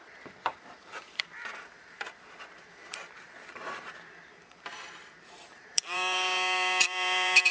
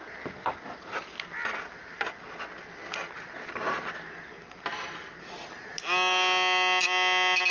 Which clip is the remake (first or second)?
first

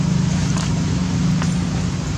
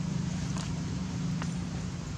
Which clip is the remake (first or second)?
second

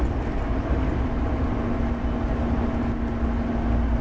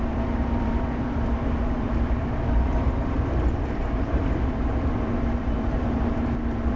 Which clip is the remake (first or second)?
second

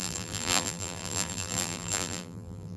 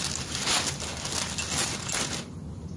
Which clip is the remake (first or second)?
first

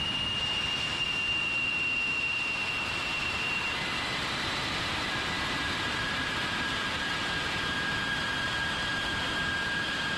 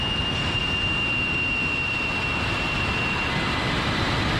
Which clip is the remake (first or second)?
first